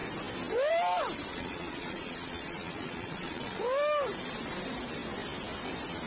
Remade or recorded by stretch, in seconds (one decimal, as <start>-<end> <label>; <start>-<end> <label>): 0.0-1.3 recorded; 1.3-3.6 remade; 3.6-6.1 recorded